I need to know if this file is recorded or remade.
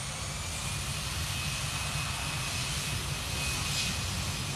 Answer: recorded